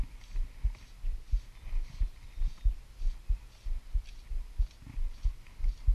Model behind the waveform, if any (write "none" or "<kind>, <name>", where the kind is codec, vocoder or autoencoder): none